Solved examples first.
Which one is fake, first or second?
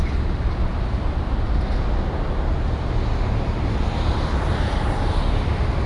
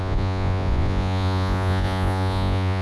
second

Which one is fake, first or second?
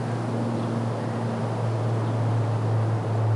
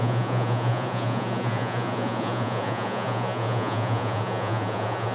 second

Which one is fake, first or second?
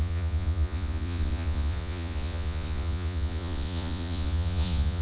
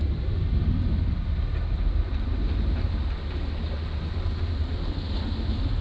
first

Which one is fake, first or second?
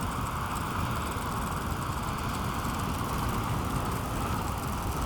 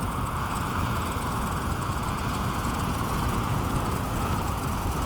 second